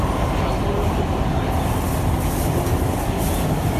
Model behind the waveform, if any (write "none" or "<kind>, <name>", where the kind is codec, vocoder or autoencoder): none